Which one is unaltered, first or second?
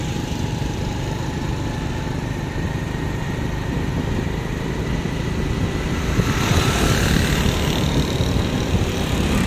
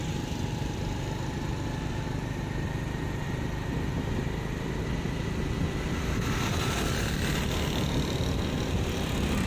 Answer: second